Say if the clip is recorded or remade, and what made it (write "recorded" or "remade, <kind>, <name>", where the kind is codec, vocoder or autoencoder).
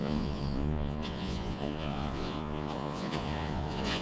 remade, vocoder, Vocos